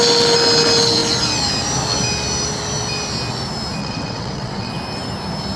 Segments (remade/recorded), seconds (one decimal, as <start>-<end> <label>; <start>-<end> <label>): 0.0-3.8 recorded; 3.8-4.7 remade; 4.7-5.6 recorded

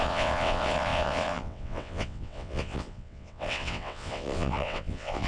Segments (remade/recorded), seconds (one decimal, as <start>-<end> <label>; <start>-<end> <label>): 0.0-5.3 remade